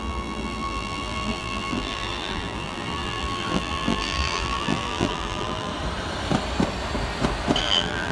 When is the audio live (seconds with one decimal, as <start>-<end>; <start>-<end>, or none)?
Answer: 5.7-7.6